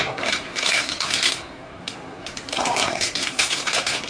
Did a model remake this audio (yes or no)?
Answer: yes